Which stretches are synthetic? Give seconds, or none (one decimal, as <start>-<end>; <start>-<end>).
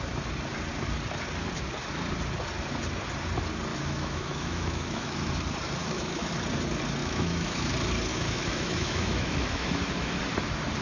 3.7-5.3; 5.8-6.3; 7.0-7.7; 8.1-10.2